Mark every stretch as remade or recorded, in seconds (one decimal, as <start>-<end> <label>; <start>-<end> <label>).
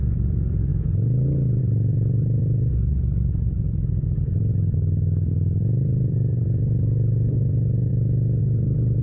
0.0-0.7 remade; 0.7-1.6 recorded; 1.6-7.9 remade; 7.9-8.4 recorded; 8.4-9.0 remade